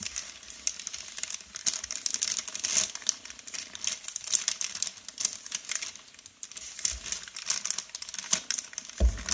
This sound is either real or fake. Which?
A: real